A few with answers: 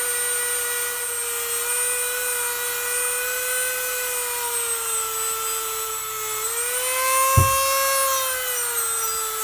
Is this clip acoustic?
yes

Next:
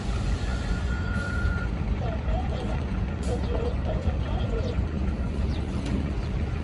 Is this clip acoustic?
no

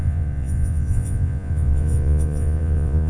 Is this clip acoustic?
no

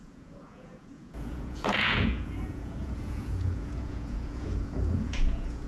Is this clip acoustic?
no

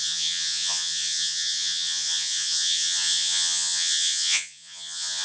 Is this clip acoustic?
no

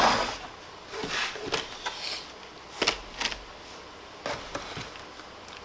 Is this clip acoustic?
yes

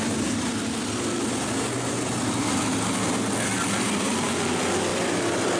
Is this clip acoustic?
yes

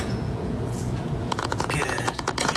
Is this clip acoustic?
no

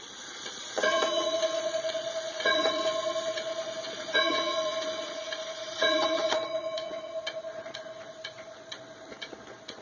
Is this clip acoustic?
no